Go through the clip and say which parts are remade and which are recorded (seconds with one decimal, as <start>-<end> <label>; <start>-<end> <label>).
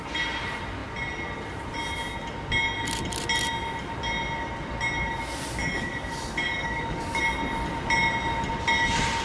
0.0-5.6 recorded; 5.6-7.2 remade; 7.2-9.2 recorded